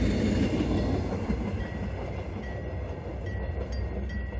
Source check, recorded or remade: recorded